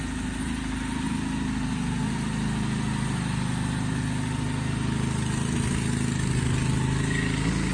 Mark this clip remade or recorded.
recorded